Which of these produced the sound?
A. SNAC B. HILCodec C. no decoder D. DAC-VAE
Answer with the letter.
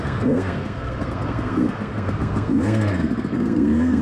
A